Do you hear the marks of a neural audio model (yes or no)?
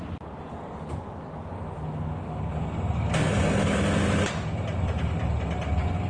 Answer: no